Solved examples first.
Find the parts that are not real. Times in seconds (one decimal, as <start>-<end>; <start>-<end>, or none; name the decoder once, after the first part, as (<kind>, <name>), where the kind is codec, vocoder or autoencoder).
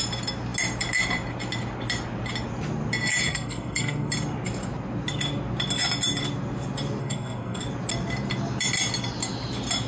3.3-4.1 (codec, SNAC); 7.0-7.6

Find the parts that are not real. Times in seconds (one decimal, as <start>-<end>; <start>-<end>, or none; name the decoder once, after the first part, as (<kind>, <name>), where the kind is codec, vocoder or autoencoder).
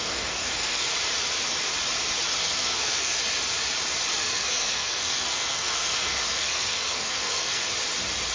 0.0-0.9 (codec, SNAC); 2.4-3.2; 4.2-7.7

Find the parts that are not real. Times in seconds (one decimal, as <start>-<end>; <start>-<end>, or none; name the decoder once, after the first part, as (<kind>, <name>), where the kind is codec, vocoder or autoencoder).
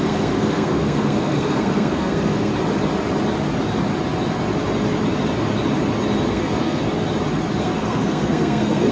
0.0-2.5 (codec, SNAC); 6.3-6.8; 7.6-8.9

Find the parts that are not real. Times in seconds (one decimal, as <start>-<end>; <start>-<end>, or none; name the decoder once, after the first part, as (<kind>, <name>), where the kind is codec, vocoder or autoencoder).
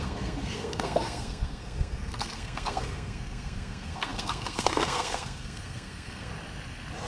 0.0-6.3 (codec, SNAC)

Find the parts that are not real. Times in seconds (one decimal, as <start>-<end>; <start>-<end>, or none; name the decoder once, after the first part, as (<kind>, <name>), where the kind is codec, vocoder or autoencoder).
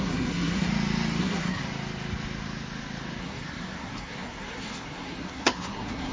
0.0-0.7 (codec, SNAC); 1.2-1.6; 3.2-6.1